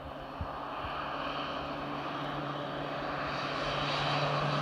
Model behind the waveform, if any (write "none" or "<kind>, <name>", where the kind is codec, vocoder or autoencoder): none